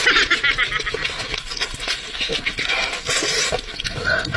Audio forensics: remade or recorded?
recorded